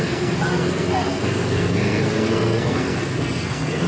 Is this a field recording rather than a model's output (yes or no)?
no